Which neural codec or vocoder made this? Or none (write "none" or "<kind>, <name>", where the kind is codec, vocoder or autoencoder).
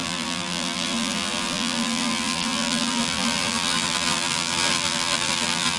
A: vocoder, BigVGAN v2